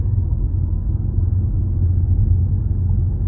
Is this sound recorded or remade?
recorded